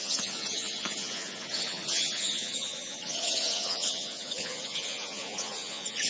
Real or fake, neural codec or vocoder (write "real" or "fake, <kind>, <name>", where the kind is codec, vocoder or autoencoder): fake, vocoder, Vocos